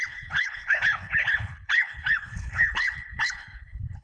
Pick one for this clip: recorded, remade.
remade